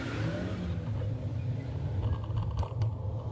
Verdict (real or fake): real